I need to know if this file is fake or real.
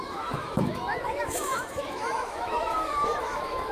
fake